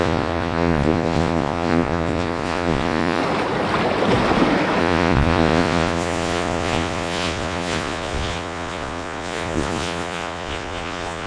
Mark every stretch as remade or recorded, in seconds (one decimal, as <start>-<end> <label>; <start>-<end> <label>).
0.0-3.2 remade; 3.2-4.8 recorded; 4.8-11.3 remade